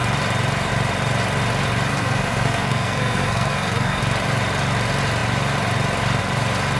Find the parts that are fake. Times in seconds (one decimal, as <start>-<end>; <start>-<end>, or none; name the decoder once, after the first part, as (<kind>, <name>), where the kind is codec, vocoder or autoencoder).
1.9-4.0 (codec, SNAC)